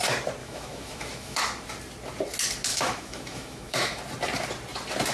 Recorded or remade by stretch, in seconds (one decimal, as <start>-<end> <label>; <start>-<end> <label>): 0.0-0.4 recorded; 0.4-1.4 remade; 1.4-2.7 recorded; 2.7-4.0 remade; 4.0-5.1 recorded